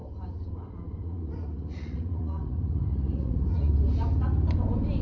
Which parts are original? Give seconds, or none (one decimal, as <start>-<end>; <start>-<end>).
0.0-1.0; 3.7-5.0